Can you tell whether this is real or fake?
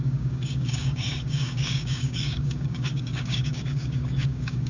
fake